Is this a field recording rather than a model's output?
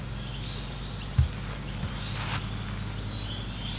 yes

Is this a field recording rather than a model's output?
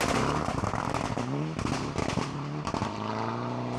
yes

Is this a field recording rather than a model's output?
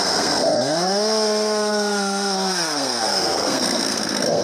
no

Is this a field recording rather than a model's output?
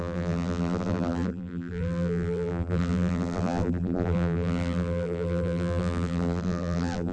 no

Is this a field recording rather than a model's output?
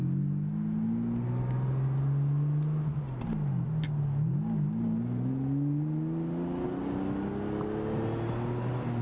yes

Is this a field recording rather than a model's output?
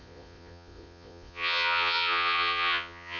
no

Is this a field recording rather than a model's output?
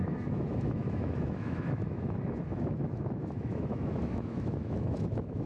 no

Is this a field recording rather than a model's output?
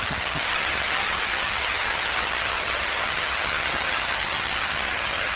no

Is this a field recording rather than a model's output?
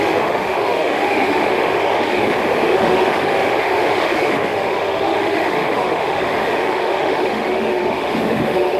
no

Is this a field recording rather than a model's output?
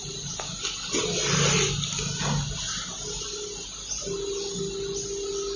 yes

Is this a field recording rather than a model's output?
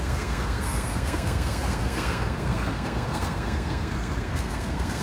no